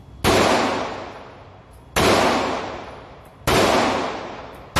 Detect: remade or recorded recorded